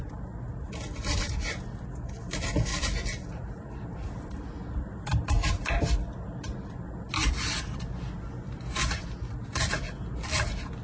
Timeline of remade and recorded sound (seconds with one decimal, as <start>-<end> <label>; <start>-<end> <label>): 0.0-10.8 recorded